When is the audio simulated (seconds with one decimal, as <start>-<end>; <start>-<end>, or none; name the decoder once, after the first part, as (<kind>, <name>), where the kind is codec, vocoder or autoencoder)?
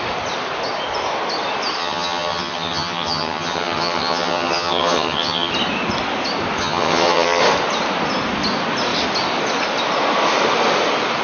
1.8-5.5 (vocoder, HiFi-GAN); 6.6-7.4